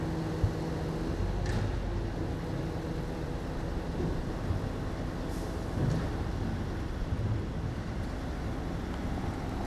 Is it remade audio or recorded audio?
recorded